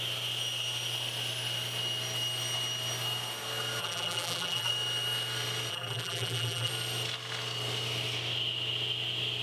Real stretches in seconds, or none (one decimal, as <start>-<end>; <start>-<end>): 0.0-3.8; 4.7-5.7; 6.7-9.4

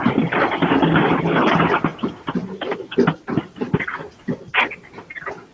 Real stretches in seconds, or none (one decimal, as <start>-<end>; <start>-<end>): 0.0-5.5

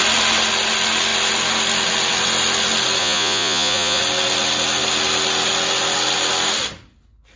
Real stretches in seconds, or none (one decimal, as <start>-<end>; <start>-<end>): 0.0-3.0; 4.0-7.4

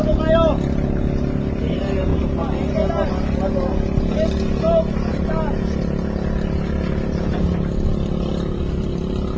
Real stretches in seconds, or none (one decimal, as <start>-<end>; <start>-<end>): 0.0-9.4

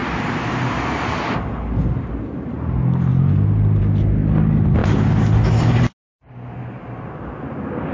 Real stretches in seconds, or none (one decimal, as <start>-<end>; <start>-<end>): 0.0-7.9

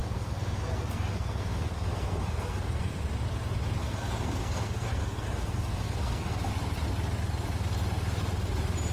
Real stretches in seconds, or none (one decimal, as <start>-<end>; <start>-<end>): 3.0-3.8; 6.5-8.9